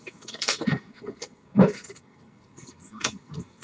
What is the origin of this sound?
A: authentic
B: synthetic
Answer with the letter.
B